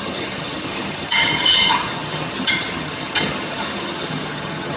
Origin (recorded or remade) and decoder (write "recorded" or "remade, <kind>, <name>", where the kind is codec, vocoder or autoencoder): remade, vocoder, HiFi-GAN